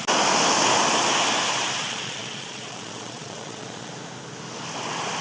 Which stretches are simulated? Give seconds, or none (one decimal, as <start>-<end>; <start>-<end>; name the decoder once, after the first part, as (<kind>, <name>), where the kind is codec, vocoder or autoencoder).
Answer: 1.8-3.9 (vocoder, Vocos)